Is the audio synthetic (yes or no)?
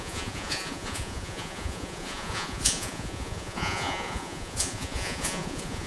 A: yes